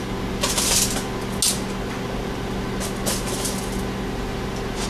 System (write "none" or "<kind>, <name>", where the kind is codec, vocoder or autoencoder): none